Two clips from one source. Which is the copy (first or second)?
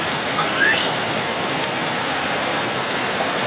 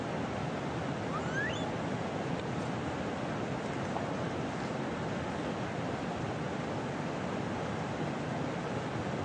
first